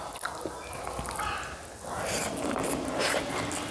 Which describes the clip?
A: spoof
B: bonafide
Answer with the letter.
B